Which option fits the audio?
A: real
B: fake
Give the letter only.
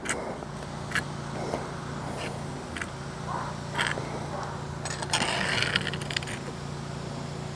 A